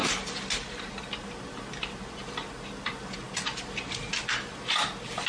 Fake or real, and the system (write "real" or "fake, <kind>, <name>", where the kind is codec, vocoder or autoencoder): real